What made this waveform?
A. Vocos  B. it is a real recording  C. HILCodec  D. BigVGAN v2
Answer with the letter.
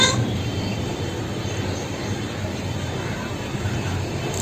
D